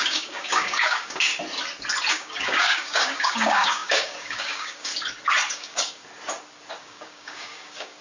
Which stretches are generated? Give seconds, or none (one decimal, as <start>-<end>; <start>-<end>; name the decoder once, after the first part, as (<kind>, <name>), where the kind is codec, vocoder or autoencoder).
0.0-1.3 (codec, DAC); 2.1-4.9; 5.5-6.0; 6.8-8.0